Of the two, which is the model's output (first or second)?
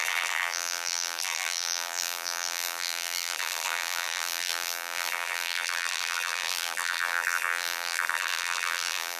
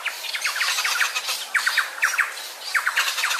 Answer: first